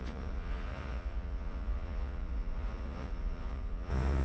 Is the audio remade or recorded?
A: remade